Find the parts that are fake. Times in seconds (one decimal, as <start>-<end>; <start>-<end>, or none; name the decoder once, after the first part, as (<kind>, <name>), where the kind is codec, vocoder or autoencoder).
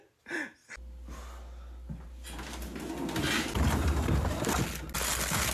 none